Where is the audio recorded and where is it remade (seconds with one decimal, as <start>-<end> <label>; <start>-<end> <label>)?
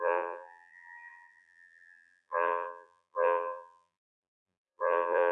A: 0.0-5.3 remade